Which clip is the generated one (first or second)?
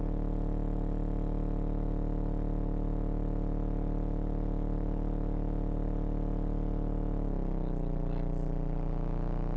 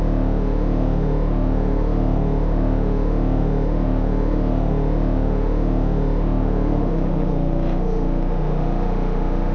second